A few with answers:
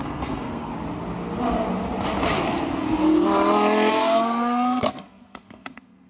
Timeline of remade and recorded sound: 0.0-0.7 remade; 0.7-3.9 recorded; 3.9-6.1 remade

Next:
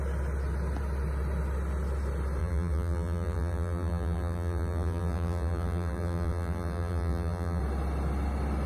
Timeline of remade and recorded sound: 0.0-2.4 recorded; 2.4-7.6 remade; 7.6-8.7 recorded

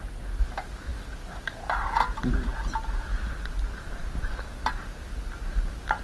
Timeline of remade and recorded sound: 0.0-4.0 recorded; 4.0-5.1 remade; 5.1-6.0 recorded

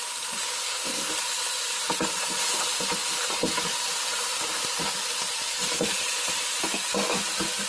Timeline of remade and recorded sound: 0.0-0.6 recorded; 0.6-1.1 remade; 1.1-7.7 recorded